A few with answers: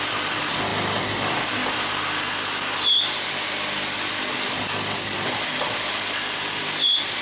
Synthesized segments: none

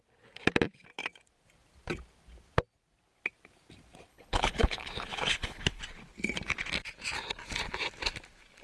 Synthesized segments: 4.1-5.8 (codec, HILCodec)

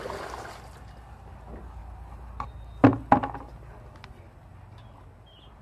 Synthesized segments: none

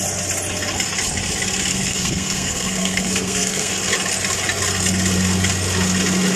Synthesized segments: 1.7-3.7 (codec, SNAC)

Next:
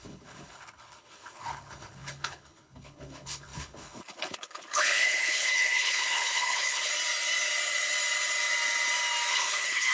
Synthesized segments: 0.0-6.9 (codec, HILCodec); 9.3-9.9

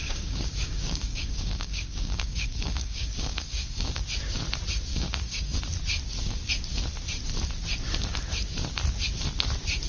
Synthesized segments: 0.0-4.0 (codec, DAC); 4.9-5.6

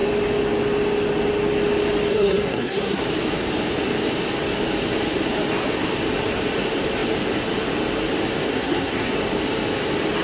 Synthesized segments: 2.1-3.0 (codec, SNAC); 8.5-9.1

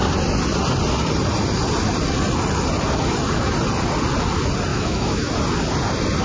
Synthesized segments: 4.7-5.3 (autoencoder, DAC-VAE)